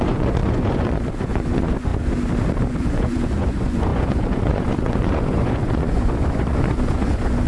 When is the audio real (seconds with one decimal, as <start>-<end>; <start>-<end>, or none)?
1.9-2.7